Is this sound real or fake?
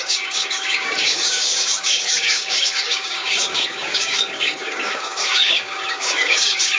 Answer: fake